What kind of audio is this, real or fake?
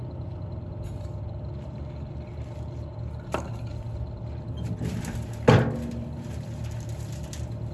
real